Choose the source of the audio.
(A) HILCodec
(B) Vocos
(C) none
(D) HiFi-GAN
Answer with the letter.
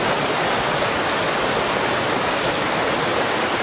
C